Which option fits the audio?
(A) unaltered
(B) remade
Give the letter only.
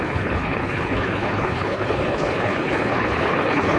B